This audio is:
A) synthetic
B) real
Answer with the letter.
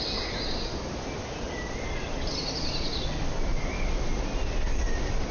B